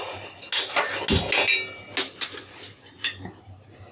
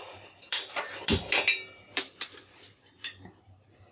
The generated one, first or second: second